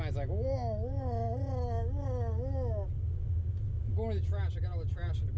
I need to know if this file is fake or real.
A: real